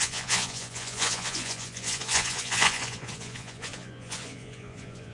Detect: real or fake fake